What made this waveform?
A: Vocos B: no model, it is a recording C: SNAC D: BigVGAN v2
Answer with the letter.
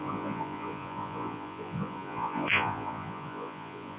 A